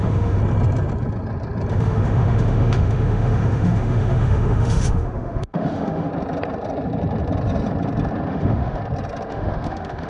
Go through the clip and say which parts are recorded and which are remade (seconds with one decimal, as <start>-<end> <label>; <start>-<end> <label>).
0.0-0.4 remade; 0.4-1.7 recorded; 1.7-6.1 remade; 6.1-8.3 recorded; 8.3-8.8 remade; 8.8-9.3 recorded; 9.3-10.1 remade